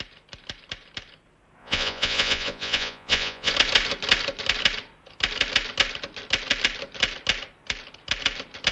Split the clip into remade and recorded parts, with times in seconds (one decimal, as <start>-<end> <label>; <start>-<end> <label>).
0.0-1.6 recorded; 1.6-3.5 remade; 3.5-8.7 recorded